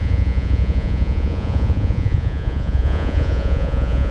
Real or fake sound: fake